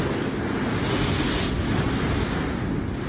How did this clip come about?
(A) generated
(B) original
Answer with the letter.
B